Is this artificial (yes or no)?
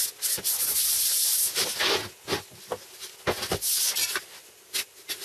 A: no